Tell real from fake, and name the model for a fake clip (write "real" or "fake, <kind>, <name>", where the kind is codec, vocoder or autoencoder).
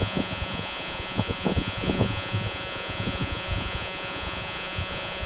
fake, vocoder, Vocos